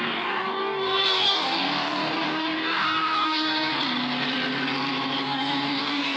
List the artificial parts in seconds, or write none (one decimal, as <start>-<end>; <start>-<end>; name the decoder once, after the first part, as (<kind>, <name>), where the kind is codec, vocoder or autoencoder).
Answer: 0.0-3.8 (codec, DAC); 5.2-6.2

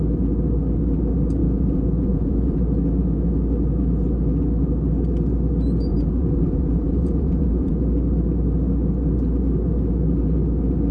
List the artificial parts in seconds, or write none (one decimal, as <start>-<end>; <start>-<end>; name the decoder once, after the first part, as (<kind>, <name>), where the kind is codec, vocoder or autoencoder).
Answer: 1.4-2.6 (vocoder, Vocos); 5.9-7.7

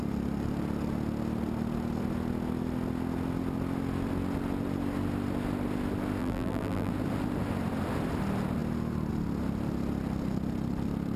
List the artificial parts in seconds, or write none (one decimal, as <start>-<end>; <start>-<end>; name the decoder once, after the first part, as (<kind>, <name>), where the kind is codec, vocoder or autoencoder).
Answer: 6.2-6.9 (vocoder, BigVGAN v2)

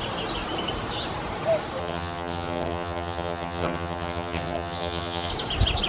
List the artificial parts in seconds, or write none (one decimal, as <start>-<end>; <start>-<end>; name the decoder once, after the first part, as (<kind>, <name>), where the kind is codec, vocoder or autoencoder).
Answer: 1.8-5.3 (vocoder, HiFi-GAN)

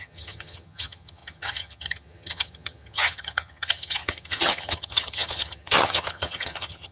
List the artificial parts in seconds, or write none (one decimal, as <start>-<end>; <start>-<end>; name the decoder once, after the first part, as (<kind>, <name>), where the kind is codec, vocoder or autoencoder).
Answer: 0.0-6.9 (vocoder, HiFi-GAN)

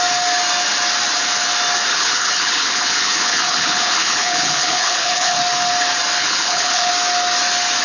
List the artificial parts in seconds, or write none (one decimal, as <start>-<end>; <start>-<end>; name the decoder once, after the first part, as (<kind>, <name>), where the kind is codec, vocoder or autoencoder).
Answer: 1.9-5.4 (codec, HILCodec); 6.2-6.9